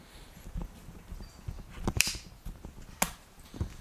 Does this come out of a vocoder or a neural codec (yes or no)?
no